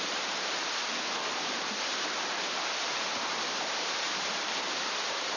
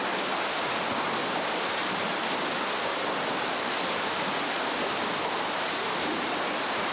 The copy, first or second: first